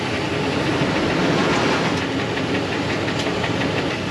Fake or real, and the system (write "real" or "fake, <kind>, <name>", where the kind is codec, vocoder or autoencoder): real